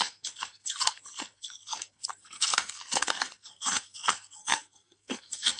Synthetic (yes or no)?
yes